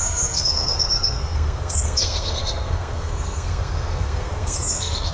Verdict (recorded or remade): remade